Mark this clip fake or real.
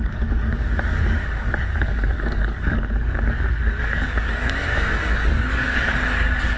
fake